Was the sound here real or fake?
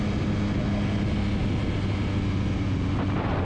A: real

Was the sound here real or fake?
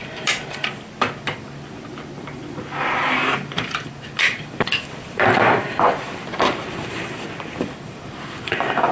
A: fake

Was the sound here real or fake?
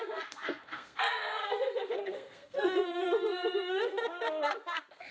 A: fake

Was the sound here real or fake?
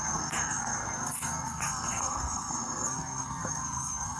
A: fake